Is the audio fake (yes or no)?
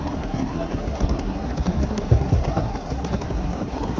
yes